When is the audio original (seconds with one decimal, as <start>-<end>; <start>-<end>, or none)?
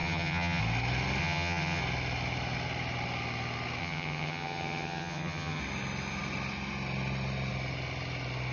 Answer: 0.6-1.2; 1.8-3.8; 5.6-8.5